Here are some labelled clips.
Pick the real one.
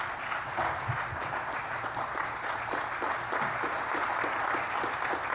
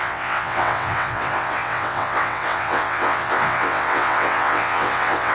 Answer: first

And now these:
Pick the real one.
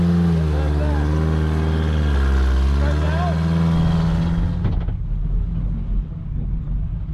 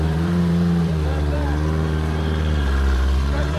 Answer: first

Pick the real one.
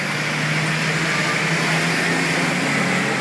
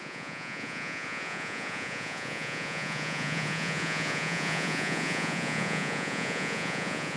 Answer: first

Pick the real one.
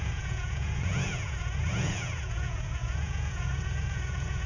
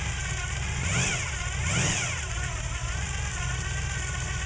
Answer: second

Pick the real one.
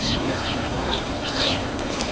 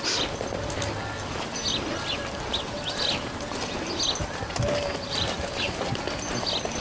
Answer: second